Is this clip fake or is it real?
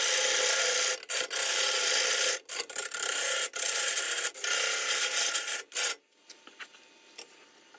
real